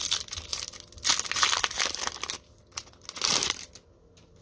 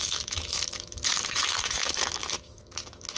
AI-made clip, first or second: second